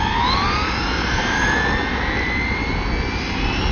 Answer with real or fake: real